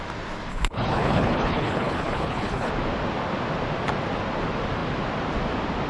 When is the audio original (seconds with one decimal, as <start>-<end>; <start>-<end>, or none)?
0.0-0.5; 2.7-5.9